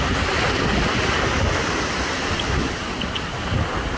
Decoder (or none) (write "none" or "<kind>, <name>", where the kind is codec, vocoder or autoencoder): none